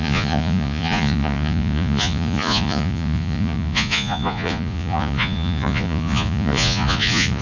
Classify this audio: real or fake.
fake